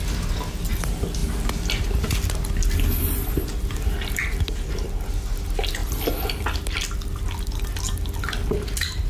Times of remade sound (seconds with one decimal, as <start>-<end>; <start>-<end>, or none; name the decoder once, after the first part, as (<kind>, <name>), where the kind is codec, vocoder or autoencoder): none